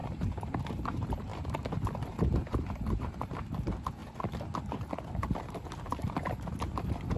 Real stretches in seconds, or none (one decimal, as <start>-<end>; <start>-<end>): 1.3-2.1; 4.0-5.1